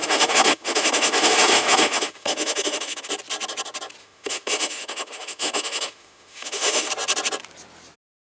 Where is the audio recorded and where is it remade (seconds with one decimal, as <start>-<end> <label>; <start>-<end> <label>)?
0.0-3.1 remade; 3.1-4.0 recorded; 4.0-6.9 remade; 6.9-8.2 recorded